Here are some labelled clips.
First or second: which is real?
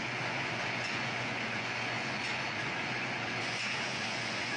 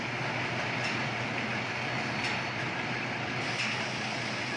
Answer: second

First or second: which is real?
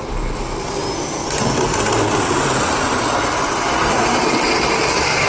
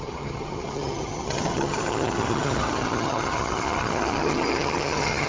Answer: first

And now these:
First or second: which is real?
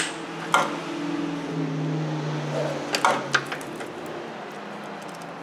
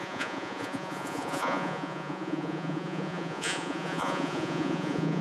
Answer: first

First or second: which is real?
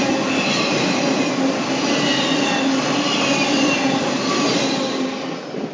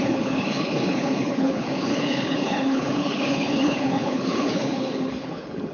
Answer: first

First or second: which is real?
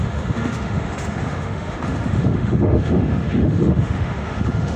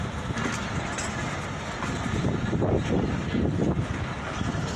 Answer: second